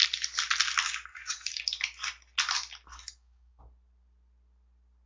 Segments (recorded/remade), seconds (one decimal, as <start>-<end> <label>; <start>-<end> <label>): 0.0-1.1 recorded; 1.1-1.6 remade; 1.6-2.9 recorded; 2.9-3.6 remade; 3.6-5.1 recorded